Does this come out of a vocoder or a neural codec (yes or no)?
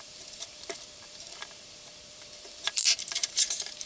yes